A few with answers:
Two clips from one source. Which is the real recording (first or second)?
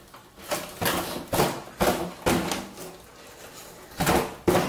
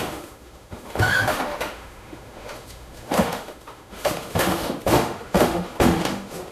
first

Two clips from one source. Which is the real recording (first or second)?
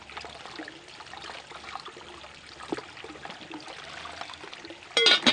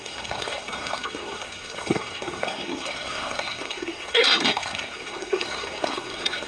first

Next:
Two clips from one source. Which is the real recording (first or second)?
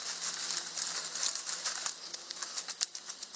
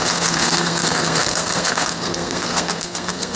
first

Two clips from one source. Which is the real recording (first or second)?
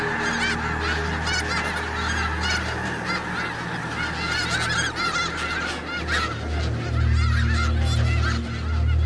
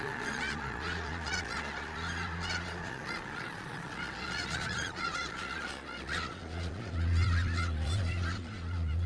first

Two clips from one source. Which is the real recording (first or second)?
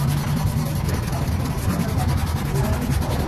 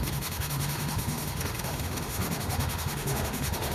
first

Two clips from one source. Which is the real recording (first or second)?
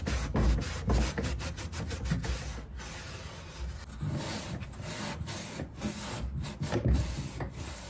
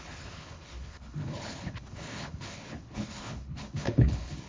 first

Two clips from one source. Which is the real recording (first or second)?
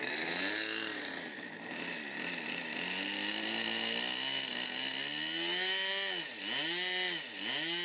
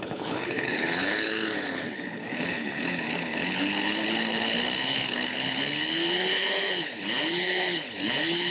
first